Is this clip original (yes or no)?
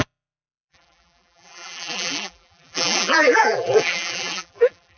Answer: no